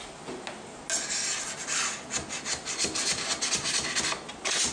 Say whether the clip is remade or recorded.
recorded